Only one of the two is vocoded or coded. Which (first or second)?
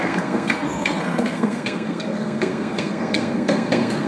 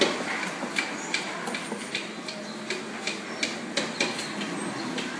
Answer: first